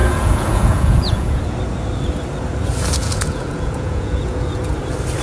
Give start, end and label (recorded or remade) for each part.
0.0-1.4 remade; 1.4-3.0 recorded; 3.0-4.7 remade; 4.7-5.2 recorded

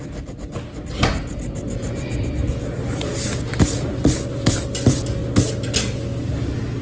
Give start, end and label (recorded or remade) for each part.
0.0-6.8 recorded